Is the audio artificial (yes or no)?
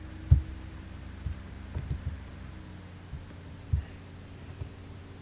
no